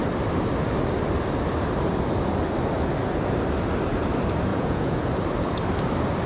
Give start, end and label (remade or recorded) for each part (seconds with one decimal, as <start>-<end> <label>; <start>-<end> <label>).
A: 0.0-4.5 recorded; 4.5-5.1 remade; 5.1-6.3 recorded

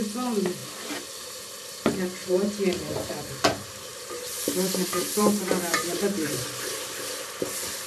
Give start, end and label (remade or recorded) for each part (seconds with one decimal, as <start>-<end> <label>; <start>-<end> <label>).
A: 0.0-2.2 recorded; 2.2-6.4 remade; 6.4-7.9 recorded

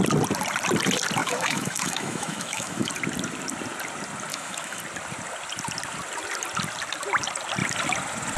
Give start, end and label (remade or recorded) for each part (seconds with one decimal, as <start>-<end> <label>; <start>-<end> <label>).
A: 0.0-1.2 recorded; 1.2-2.9 remade; 2.9-4.3 recorded; 4.3-4.8 remade; 4.8-8.4 recorded